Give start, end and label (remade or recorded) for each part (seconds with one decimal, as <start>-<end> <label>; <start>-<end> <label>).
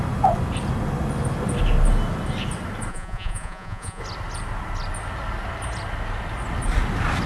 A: 0.0-2.9 recorded; 2.9-4.0 remade; 4.0-7.3 recorded